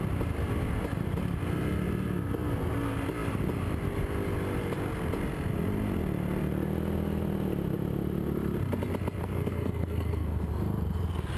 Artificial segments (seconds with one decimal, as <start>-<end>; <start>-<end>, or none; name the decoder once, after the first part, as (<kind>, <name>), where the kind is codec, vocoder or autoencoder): 9.2-10.5 (codec, SNAC)